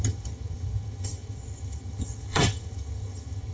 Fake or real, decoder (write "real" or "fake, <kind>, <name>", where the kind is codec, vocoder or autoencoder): fake, vocoder, HiFi-GAN